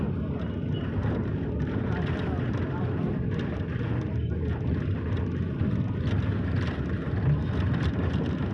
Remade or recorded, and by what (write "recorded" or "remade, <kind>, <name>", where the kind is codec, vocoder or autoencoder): recorded